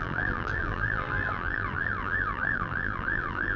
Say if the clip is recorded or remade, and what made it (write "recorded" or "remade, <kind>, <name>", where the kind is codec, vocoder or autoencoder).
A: remade, vocoder, BigVGAN v2